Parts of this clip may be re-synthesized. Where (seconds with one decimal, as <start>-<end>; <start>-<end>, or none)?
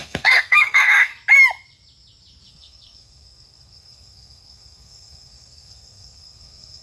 0.0-1.1; 2.5-6.8